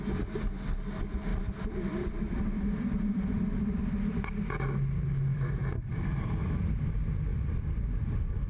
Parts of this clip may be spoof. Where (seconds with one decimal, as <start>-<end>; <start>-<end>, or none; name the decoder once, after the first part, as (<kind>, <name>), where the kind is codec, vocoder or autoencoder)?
1.3-4.3 (vocoder, BigVGAN v2); 5.3-6.6